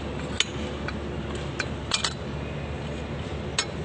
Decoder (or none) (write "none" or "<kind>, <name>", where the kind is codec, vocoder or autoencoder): none